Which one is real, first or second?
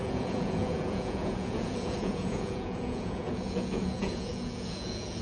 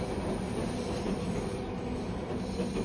second